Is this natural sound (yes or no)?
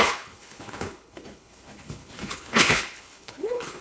no